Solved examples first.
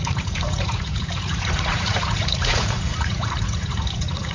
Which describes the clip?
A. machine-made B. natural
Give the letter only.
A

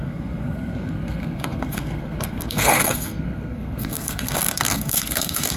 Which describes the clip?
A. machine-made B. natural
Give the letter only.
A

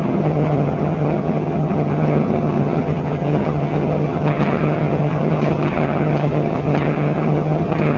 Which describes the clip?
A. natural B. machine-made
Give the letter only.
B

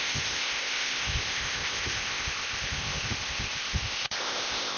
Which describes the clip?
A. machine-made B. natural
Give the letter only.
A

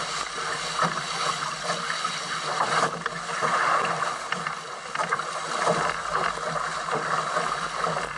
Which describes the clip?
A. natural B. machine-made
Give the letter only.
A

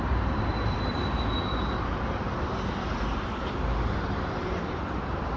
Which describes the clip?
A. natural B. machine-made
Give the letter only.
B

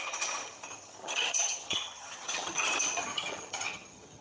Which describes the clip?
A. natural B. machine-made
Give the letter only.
B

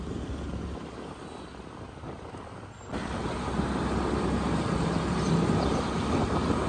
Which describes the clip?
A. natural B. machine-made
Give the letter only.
A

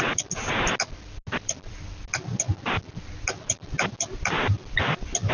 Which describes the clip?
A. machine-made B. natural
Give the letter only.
B